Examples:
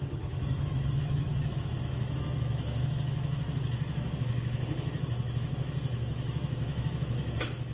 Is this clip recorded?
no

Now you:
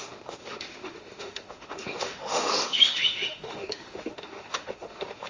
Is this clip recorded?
no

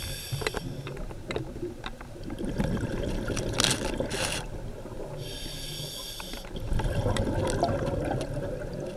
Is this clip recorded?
yes